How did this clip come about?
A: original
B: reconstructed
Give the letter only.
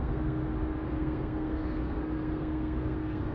B